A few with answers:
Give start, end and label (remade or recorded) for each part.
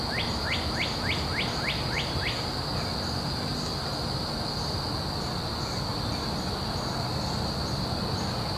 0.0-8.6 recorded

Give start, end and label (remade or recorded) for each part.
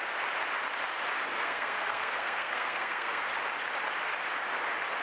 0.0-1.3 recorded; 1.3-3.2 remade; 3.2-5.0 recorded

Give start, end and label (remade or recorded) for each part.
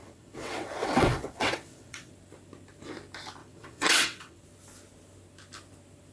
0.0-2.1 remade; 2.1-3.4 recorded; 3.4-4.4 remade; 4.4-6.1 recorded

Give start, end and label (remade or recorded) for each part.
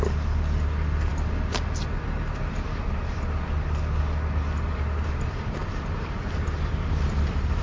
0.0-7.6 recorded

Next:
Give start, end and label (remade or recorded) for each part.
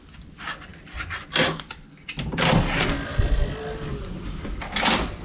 0.0-5.2 recorded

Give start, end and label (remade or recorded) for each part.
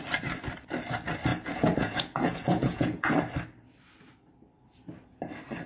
0.0-1.3 recorded; 1.3-3.1 remade; 3.1-5.7 recorded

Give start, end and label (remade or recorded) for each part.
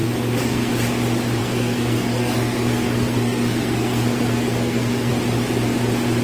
0.0-0.7 remade; 0.7-1.4 recorded; 1.4-5.1 remade; 5.1-6.2 recorded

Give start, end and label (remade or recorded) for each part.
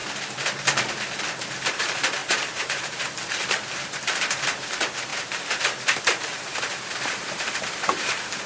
0.0-1.5 recorded; 1.5-8.5 remade